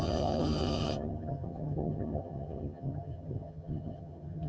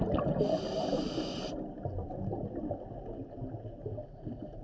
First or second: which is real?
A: second